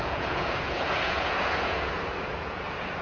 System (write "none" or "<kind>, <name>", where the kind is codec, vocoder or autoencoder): vocoder, Vocos